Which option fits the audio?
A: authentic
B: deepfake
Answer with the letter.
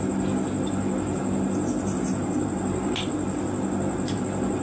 A